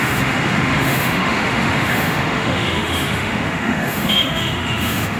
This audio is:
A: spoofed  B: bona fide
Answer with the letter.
A